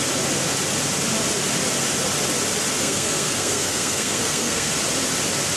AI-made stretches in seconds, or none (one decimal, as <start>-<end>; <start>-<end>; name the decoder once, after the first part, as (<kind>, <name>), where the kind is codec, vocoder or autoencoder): 2.8-4.7 (codec, SNAC)